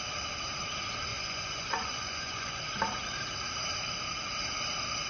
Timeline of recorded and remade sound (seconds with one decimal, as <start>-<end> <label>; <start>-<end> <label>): 0.0-1.1 recorded; 1.1-2.6 remade; 2.6-5.1 recorded